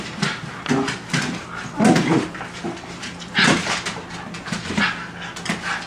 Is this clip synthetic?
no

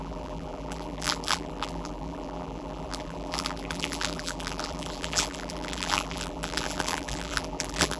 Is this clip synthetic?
yes